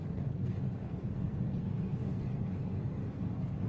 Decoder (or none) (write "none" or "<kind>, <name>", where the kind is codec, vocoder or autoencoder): codec, SNAC